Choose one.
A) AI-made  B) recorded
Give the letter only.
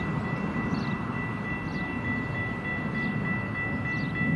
B